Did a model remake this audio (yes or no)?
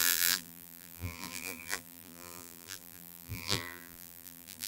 yes